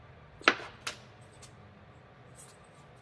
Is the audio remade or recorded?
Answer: recorded